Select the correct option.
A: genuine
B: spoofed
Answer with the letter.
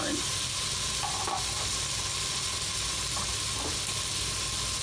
A